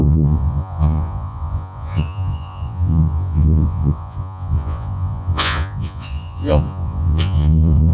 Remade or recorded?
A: remade